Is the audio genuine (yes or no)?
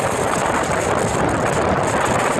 yes